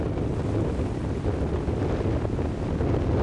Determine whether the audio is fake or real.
real